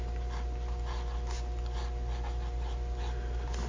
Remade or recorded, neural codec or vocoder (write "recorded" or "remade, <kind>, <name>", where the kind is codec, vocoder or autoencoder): recorded